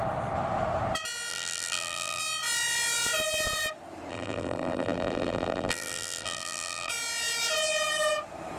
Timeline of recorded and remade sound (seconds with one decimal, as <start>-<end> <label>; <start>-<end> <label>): 0.0-1.3 recorded; 1.3-2.2 remade; 2.2-4.1 recorded; 4.1-6.9 remade; 6.9-8.6 recorded